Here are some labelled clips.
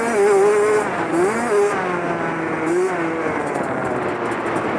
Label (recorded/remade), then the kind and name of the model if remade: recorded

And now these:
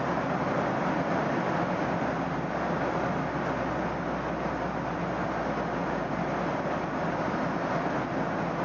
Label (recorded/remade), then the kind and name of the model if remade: recorded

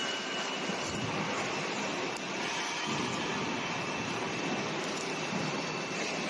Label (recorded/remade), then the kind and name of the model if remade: remade, vocoder, BigVGAN v2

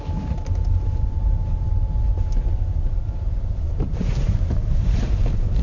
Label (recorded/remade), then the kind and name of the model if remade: remade, vocoder, BigVGAN v2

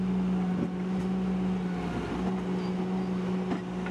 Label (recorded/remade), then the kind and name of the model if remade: recorded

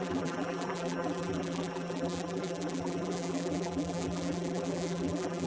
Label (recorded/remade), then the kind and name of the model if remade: remade, vocoder, BigVGAN v2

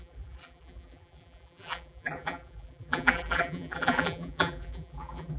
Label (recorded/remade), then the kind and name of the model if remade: remade, vocoder, BigVGAN v2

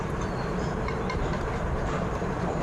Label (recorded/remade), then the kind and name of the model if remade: remade, vocoder, BigVGAN v2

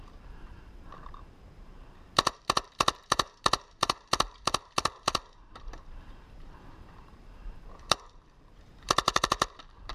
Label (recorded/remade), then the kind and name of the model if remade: remade, vocoder, BigVGAN v2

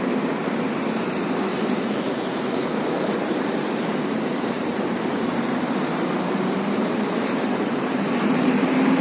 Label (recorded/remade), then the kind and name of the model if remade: remade, vocoder, BigVGAN v2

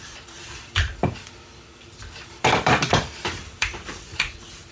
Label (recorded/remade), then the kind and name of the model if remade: remade, vocoder, BigVGAN v2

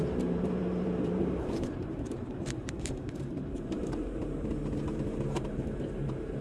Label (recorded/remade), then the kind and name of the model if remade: remade, vocoder, BigVGAN v2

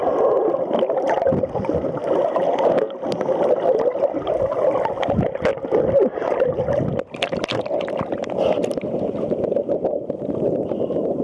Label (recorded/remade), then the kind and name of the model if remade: recorded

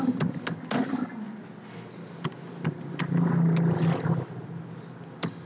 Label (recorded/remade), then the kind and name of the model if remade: recorded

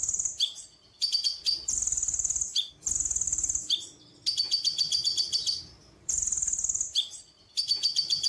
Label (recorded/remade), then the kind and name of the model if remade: remade, vocoder, BigVGAN v2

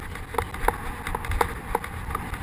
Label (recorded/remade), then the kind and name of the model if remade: recorded